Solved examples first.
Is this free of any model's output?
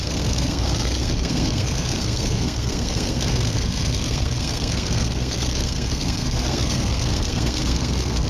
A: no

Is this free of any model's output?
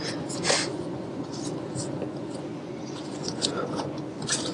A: no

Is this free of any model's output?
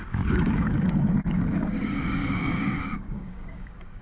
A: no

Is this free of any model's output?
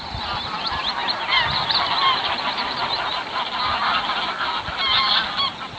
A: yes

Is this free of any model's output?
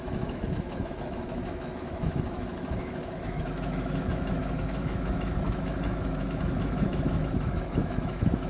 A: no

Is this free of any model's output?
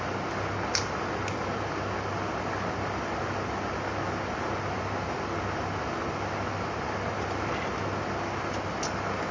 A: yes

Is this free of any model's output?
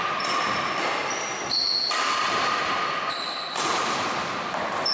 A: yes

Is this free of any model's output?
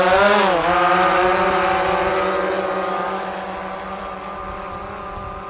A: yes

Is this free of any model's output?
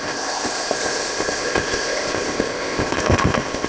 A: no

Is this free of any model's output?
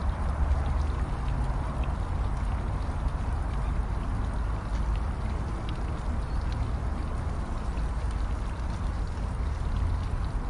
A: yes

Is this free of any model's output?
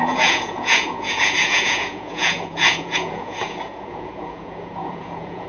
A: no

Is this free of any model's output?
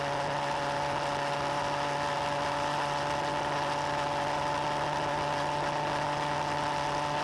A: yes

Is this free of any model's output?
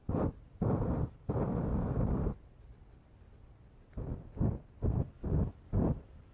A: no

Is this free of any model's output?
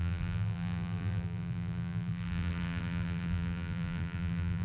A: no